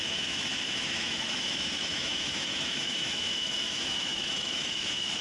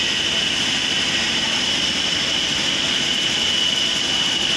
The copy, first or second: first